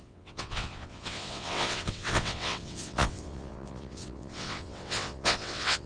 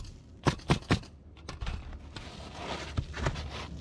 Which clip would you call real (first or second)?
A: second